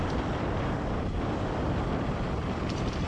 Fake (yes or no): yes